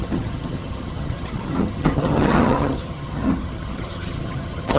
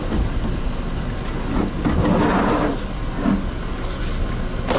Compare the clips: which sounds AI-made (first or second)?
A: first